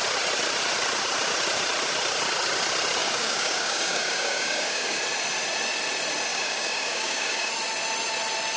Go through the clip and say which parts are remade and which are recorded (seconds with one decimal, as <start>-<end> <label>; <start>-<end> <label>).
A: 0.0-3.0 recorded; 3.0-5.0 remade; 5.0-6.3 recorded; 6.3-7.5 remade; 7.5-8.6 recorded